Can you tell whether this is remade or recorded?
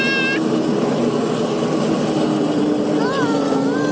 recorded